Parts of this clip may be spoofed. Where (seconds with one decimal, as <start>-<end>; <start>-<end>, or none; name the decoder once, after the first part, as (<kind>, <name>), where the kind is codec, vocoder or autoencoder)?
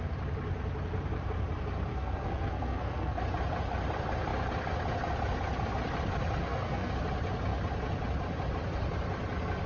1.9-3.2 (codec, SNAC); 6.4-6.9